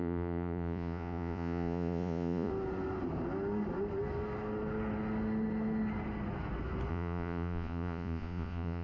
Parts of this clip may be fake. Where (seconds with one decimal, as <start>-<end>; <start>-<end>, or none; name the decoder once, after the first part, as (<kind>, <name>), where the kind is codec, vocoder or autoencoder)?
0.0-2.5 (vocoder, Vocos); 6.9-8.8